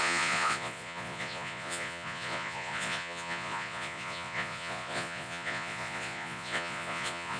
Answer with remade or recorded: remade